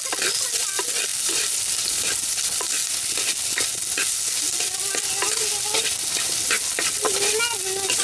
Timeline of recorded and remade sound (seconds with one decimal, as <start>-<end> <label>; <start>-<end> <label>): 0.0-1.1 recorded; 1.1-2.1 remade; 2.1-8.0 recorded